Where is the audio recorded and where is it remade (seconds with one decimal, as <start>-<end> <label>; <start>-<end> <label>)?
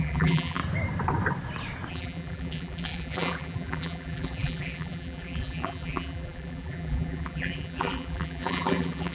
0.0-0.6 remade; 0.6-1.9 recorded; 1.9-9.1 remade